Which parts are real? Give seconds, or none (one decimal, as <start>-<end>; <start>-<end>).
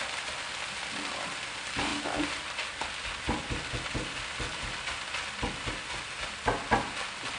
0.0-7.4